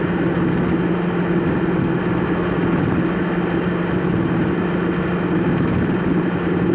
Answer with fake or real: real